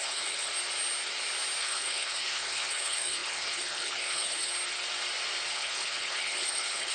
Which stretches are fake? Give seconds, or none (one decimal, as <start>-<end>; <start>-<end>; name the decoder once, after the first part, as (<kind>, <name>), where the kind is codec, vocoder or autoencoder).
0.0-0.5 (codec, HILCodec); 1.6-4.5; 5.5-6.9